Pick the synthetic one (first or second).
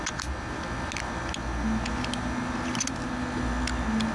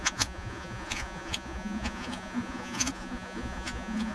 second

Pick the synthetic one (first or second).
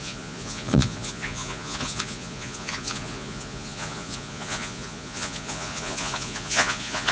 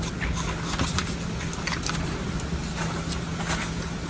first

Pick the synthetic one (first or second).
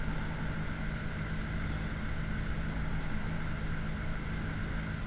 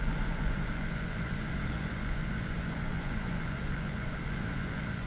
second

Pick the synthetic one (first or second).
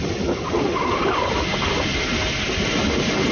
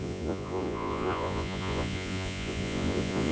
second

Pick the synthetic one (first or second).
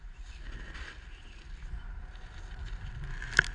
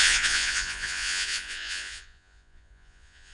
second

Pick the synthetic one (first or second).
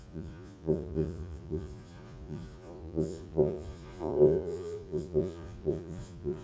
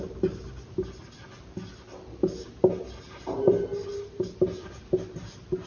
first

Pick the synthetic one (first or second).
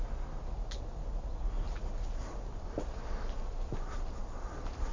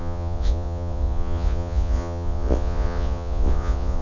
second